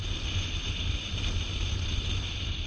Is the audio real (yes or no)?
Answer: yes